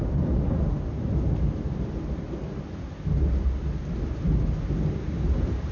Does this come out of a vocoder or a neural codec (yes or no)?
no